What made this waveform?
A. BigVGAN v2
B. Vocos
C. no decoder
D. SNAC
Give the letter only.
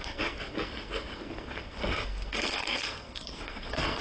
D